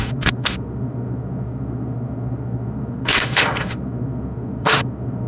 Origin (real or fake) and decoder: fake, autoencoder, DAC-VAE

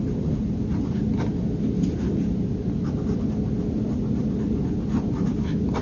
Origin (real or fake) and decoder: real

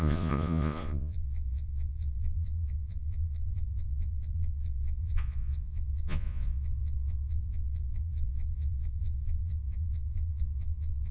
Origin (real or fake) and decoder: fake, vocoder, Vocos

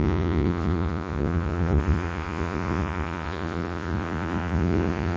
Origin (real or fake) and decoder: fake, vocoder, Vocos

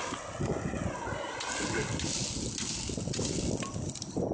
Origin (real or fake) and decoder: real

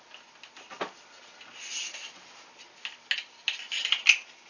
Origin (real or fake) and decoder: real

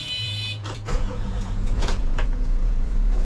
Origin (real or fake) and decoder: fake, vocoder, Vocos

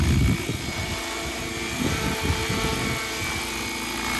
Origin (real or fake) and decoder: real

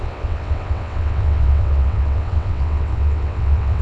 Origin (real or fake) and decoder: fake, vocoder, WaveNeXt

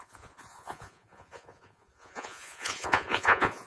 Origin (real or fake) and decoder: fake, vocoder, Vocos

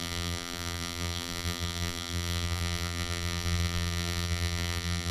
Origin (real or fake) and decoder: fake, vocoder, BigVGAN v2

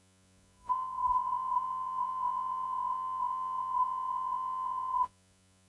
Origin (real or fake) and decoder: fake, vocoder, Vocos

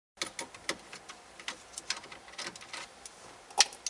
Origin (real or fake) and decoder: real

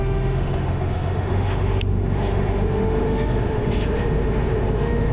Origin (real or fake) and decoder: fake, autoencoder, DAC-VAE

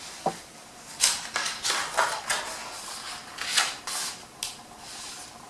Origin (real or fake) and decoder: real